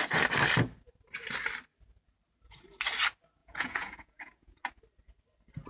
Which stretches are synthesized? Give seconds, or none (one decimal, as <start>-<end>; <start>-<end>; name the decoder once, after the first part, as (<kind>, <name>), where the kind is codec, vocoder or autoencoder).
3.4-4.7 (vocoder, Vocos)